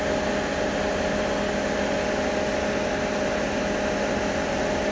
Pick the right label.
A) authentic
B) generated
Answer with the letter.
A